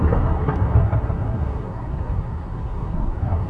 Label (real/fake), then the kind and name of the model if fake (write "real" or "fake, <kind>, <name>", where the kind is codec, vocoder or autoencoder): fake, codec, SNAC